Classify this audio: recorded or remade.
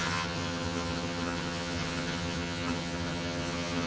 remade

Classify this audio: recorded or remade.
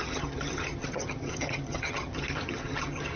remade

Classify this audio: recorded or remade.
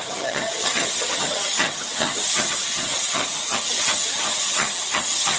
remade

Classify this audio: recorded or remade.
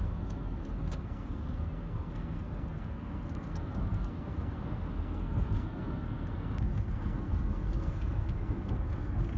remade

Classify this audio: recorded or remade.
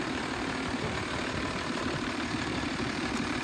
remade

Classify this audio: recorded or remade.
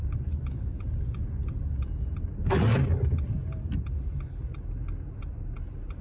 recorded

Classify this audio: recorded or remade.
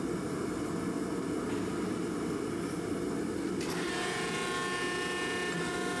recorded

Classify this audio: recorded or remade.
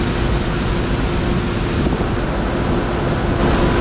recorded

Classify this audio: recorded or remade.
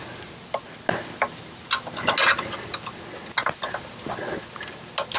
recorded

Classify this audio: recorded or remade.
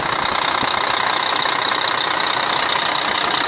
recorded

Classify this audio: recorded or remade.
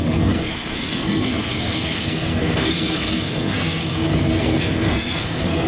remade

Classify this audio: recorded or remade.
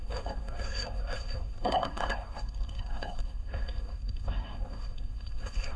remade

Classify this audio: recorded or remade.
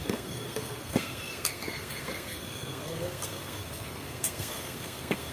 remade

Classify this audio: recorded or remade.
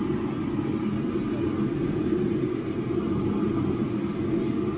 recorded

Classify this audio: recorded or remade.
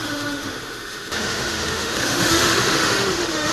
remade